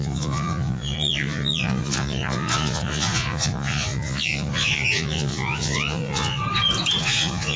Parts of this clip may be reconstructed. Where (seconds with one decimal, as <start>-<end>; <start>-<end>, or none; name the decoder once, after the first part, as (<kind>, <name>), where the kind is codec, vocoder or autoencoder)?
0.0-6.4 (vocoder, Vocos); 7.0-7.6